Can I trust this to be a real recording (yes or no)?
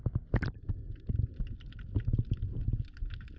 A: yes